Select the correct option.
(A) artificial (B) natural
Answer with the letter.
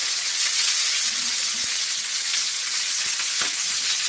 A